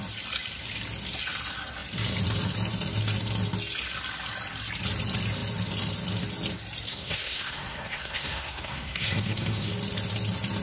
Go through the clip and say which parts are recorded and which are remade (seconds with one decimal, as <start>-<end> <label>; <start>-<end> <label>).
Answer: 0.0-6.9 recorded; 6.9-9.7 remade; 9.7-10.6 recorded